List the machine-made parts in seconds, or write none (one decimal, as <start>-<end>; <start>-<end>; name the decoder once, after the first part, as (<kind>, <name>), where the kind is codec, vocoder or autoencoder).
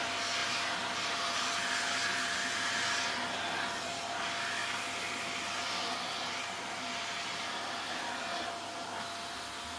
0.4-1.6 (vocoder, BigVGAN v2); 4.6-5.4